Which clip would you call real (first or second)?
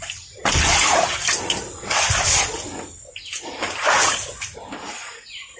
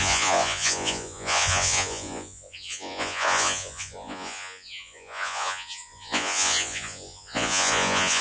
first